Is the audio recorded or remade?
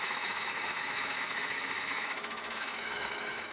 remade